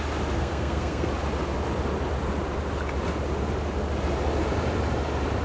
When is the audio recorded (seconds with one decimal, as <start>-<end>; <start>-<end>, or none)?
0.0-0.4; 1.1-5.4